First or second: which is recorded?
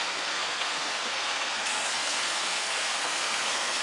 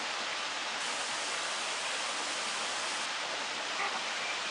second